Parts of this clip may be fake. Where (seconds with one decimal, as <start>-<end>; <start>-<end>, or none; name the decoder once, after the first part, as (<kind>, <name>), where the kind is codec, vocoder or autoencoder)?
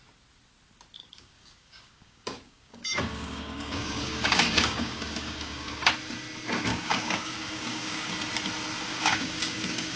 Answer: 1.0-5.9 (codec, DAC); 6.7-8.1; 8.9-10.0